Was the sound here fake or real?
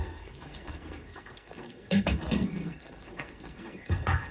fake